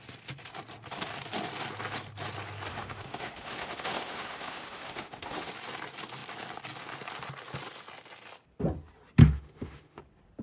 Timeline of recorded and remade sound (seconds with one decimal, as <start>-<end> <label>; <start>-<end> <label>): 0.0-2.7 recorded; 2.7-5.5 remade; 5.5-9.2 recorded; 9.2-10.0 remade; 10.0-10.4 recorded